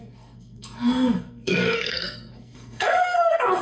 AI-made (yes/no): yes